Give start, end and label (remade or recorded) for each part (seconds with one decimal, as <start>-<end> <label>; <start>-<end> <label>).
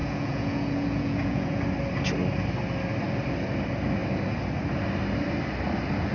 0.0-1.6 remade; 1.6-6.1 recorded